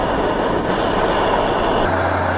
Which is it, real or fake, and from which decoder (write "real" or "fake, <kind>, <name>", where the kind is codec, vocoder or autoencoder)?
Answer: real